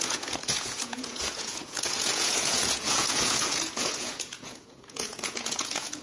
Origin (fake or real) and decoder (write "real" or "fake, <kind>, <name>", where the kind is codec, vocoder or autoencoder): fake, vocoder, Vocos